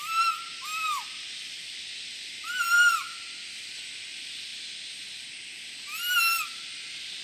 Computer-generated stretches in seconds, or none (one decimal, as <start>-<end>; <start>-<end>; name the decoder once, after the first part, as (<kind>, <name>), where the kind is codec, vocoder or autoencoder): none